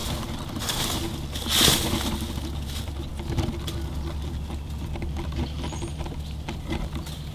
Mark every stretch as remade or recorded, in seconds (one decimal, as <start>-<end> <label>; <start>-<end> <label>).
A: 0.0-7.3 recorded